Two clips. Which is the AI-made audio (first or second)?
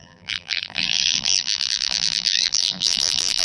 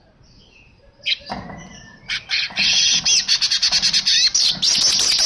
first